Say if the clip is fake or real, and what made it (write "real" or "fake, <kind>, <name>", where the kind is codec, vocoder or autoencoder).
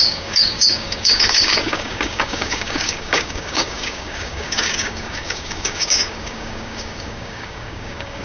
fake, codec, DAC